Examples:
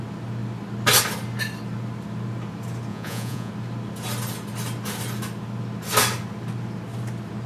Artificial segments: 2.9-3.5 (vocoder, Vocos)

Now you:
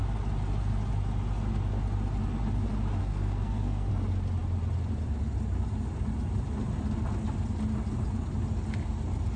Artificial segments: 3.0-3.9 (codec, SNAC)